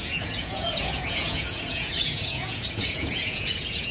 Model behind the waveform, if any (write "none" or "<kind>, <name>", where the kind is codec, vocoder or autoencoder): vocoder, Vocos